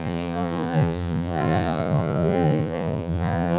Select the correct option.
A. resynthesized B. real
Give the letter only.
A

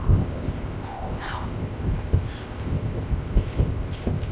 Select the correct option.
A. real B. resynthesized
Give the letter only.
B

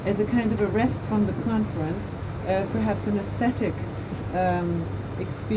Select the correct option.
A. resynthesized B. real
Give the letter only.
B